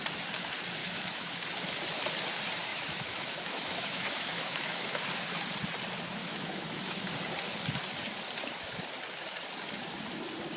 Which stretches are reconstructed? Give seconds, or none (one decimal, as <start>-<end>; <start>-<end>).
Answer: 0.8-1.4; 2.7-5.0; 6.2-7.0